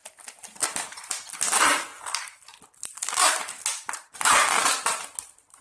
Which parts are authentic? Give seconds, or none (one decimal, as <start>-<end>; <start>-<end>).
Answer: 0.0-5.6